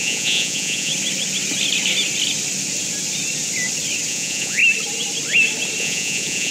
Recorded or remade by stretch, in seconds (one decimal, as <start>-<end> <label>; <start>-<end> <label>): 0.0-0.9 remade; 0.9-4.1 recorded; 4.1-4.6 remade; 4.6-5.8 recorded; 5.8-6.5 remade